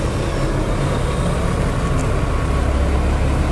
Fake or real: real